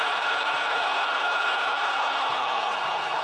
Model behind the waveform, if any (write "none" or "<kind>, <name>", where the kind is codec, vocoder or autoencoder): codec, HILCodec